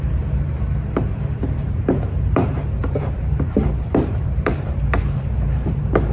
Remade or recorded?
remade